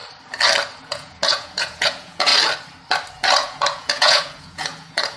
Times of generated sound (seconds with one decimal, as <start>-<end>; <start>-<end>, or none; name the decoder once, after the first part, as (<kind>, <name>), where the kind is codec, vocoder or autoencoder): 0.8-2.3 (vocoder, Vocos); 3.1-5.2